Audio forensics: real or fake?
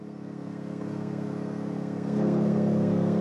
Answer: fake